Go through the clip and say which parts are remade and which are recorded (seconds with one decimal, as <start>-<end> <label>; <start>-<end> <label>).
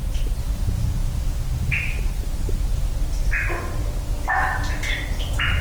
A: 0.0-5.6 recorded